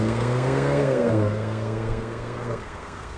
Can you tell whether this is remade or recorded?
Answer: remade